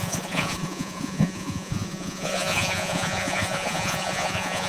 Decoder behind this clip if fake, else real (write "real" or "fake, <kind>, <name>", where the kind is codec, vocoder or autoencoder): fake, vocoder, Vocos